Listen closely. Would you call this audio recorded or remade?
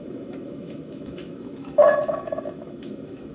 remade